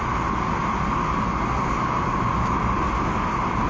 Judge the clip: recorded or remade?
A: recorded